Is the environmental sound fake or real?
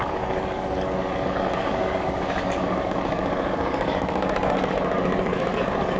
fake